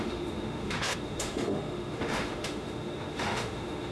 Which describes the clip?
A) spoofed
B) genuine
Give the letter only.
A